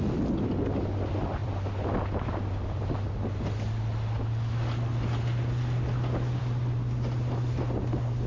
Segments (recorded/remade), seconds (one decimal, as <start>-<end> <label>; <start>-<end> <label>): 0.0-8.3 recorded